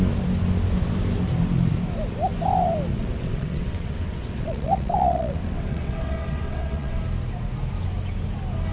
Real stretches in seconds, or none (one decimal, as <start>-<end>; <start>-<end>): 0.0-2.9; 7.0-8.7